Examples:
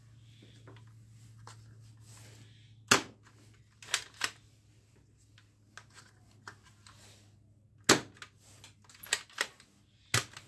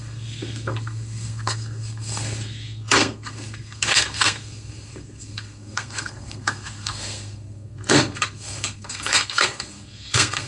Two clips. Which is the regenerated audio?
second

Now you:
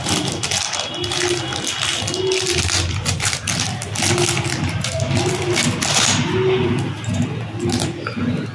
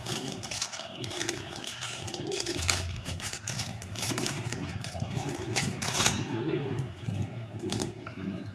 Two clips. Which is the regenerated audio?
second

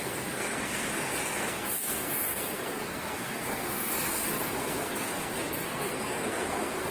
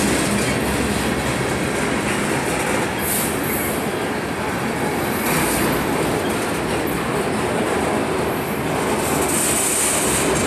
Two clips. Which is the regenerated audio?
first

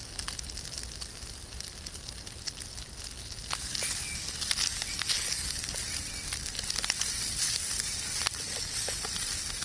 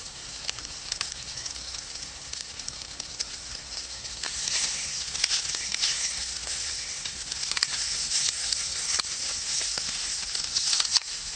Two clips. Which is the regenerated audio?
second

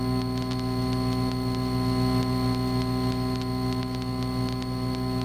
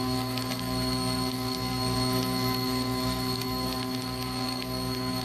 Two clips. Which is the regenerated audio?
second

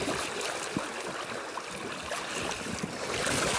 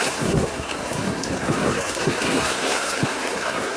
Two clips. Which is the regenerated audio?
second